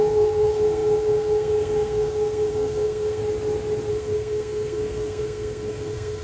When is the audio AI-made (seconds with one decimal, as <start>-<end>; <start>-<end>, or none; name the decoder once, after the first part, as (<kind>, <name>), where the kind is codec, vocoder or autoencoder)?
0.0-3.2 (codec, SNAC); 3.9-6.2